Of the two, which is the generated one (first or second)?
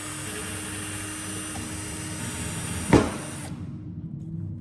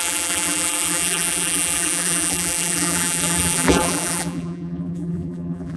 second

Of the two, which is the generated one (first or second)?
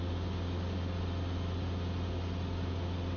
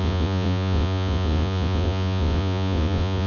second